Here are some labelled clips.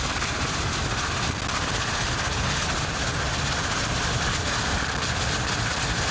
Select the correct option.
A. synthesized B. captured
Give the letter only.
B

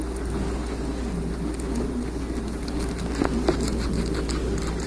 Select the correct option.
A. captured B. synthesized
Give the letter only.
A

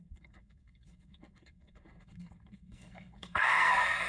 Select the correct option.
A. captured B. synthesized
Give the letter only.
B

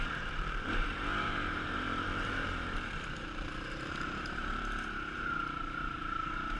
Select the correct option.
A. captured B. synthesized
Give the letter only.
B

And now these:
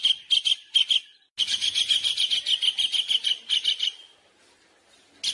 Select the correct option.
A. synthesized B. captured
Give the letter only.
B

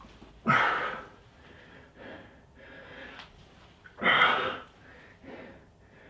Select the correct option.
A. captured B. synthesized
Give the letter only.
A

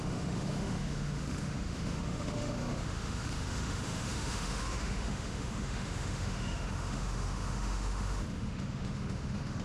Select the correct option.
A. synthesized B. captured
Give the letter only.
A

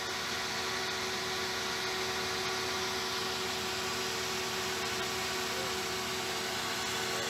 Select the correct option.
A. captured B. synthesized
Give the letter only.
A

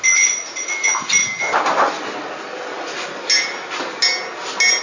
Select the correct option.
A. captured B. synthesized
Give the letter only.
A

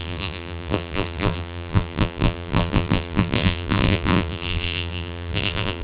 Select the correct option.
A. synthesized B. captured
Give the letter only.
A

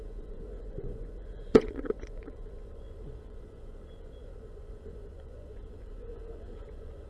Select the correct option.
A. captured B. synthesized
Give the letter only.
B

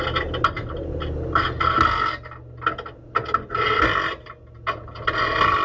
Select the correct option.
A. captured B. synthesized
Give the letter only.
A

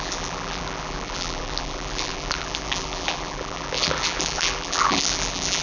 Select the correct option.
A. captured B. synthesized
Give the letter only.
B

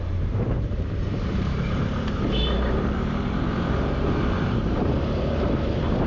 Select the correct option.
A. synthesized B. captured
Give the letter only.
A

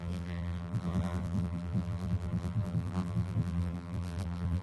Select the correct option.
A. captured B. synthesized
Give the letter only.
B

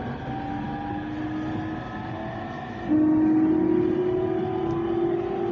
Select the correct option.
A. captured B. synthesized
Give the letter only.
A